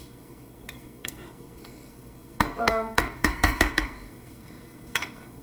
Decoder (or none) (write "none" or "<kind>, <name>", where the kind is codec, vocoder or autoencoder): codec, SNAC